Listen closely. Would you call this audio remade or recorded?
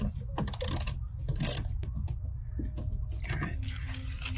recorded